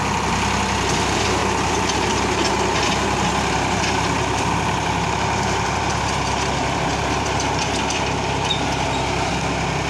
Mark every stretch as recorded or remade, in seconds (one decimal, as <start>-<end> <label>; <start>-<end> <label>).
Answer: 0.0-9.9 remade